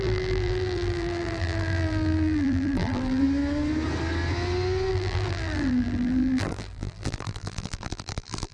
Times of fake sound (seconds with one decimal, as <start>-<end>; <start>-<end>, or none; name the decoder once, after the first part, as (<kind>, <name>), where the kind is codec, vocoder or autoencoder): 0.0-3.2 (vocoder, BigVGAN v2); 4.9-8.5